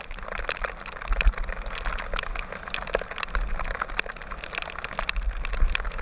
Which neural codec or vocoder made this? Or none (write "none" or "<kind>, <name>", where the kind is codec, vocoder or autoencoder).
none